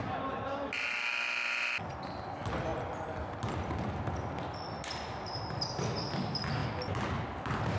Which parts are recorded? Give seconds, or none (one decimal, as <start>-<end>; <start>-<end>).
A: 0.0-7.8